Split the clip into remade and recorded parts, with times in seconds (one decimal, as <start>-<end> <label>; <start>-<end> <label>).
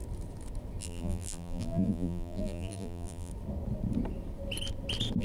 0.0-0.8 recorded; 0.8-3.3 remade; 3.3-5.2 recorded